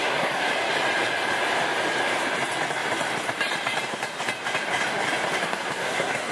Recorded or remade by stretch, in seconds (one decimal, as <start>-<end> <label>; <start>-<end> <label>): 0.0-0.5 remade; 0.5-5.4 recorded; 5.4-6.3 remade

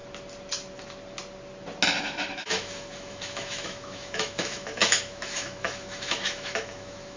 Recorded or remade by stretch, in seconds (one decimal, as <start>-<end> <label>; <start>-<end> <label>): 0.0-2.0 recorded; 2.0-7.2 remade

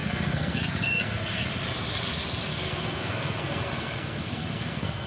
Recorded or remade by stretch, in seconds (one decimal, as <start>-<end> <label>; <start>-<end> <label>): 0.0-1.5 remade; 1.5-2.5 recorded; 2.5-5.1 remade

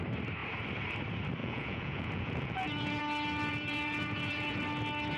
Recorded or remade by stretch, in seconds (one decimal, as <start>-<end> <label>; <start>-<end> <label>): 0.0-1.4 recorded; 1.4-3.0 remade; 3.0-3.5 recorded; 3.5-4.6 remade; 4.6-5.2 recorded

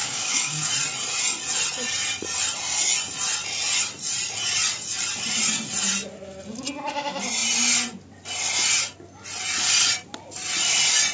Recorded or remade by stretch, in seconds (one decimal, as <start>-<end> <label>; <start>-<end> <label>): 0.0-0.7 remade; 0.7-11.1 recorded